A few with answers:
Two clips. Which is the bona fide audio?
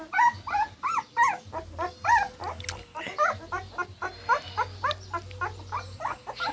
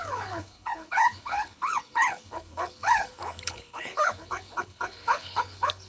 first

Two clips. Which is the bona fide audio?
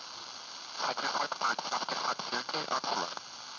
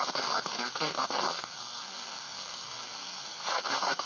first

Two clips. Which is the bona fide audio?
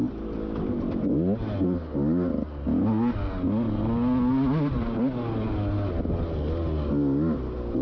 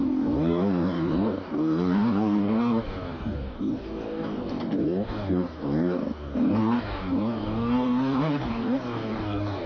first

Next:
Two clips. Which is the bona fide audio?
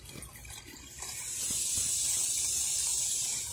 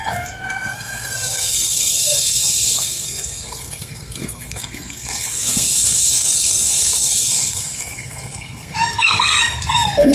first